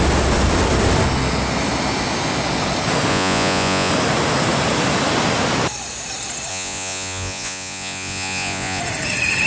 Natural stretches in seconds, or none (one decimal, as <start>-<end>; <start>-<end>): 0.0-3.1; 3.9-6.5; 8.8-9.5

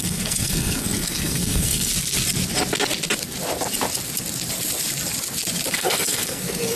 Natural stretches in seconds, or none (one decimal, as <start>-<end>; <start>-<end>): 1.9-5.7

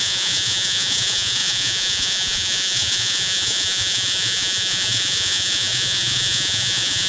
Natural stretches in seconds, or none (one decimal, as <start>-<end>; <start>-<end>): none

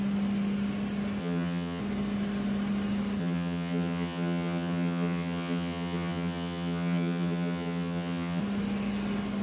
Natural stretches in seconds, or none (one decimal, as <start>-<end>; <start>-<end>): 0.0-1.2; 1.8-3.2; 8.4-9.4

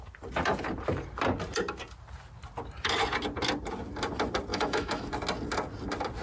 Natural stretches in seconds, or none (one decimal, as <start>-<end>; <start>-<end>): 0.0-4.5; 5.1-6.2